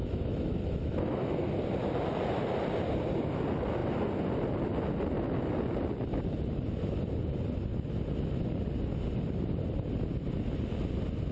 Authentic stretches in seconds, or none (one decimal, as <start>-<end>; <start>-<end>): 1.5-11.3